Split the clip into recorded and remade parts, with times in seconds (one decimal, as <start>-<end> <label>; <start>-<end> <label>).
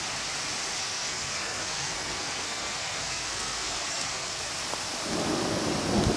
0.0-0.8 recorded; 0.8-4.5 remade; 4.5-6.2 recorded